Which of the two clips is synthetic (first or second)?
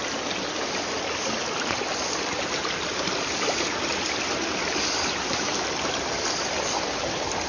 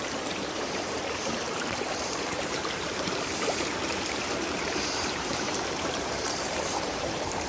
second